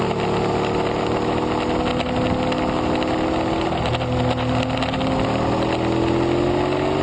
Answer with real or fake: real